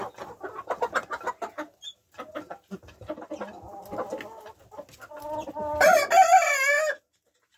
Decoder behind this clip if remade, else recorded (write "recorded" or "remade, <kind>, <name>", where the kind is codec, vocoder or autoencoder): recorded